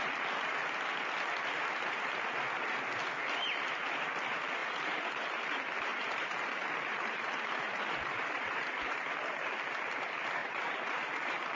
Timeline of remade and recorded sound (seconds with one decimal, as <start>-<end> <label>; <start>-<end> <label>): 0.0-4.6 recorded; 4.6-5.5 remade; 5.5-5.9 recorded; 5.9-9.0 remade; 9.0-10.4 recorded; 10.4-11.1 remade; 11.1-11.6 recorded